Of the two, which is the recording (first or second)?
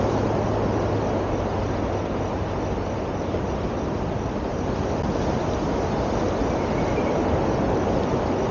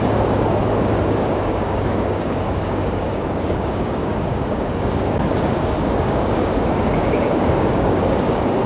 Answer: first